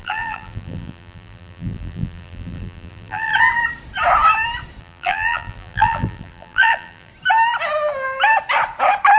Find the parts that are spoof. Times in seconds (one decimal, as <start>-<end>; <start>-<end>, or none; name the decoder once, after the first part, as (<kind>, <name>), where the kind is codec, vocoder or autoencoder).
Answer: 0.0-3.3 (vocoder, BigVGAN v2); 4.8-7.1